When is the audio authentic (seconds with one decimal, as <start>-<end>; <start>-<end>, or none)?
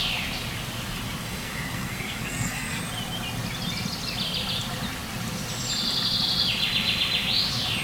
0.0-1.2; 2.8-7.8